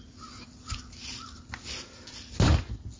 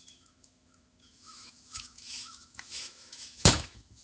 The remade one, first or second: second